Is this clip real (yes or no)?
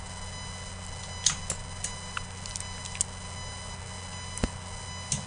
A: yes